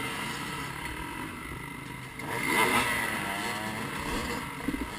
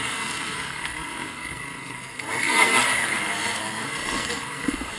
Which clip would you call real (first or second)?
first